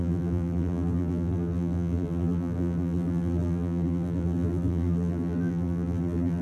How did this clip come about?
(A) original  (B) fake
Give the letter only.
B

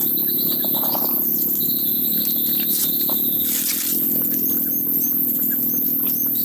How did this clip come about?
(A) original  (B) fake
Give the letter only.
A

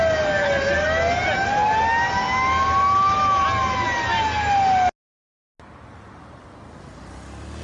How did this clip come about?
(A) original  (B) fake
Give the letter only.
A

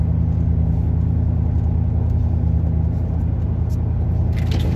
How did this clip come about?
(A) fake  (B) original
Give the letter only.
B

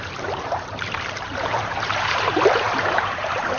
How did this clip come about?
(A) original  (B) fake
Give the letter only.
B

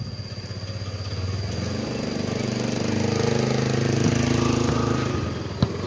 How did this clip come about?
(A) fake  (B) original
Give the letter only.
B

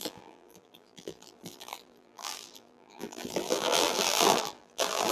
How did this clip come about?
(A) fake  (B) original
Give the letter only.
A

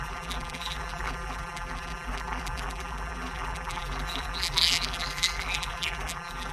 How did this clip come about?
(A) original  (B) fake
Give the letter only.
B